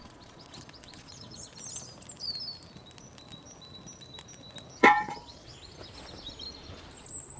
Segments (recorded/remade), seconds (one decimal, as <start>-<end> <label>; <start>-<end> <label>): 0.0-1.5 remade; 1.5-4.8 recorded; 4.8-5.5 remade; 5.5-7.4 recorded

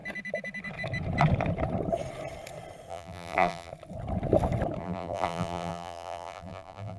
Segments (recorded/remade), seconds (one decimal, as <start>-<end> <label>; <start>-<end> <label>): 0.0-2.9 recorded; 2.9-3.7 remade; 3.7-4.8 recorded; 4.8-7.0 remade

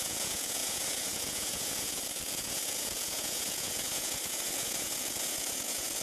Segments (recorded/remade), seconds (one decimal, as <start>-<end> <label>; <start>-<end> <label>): 0.0-6.0 remade

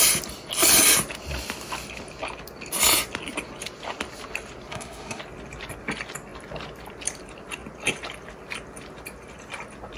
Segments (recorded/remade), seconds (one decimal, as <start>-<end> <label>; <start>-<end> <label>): 0.0-4.7 recorded; 4.7-5.2 remade; 5.2-10.0 recorded

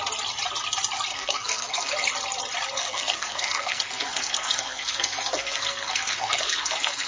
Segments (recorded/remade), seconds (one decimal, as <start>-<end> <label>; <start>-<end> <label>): 0.0-1.1 recorded; 1.1-1.9 remade; 1.9-2.8 recorded; 2.8-7.1 remade

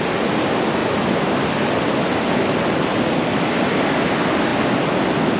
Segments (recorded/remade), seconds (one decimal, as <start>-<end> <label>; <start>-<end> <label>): 0.0-5.4 recorded

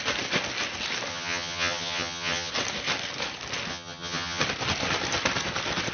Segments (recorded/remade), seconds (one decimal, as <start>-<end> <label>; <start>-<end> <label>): 0.0-1.1 recorded; 1.1-2.5 remade; 2.5-3.7 recorded; 3.7-4.4 remade; 4.4-5.9 recorded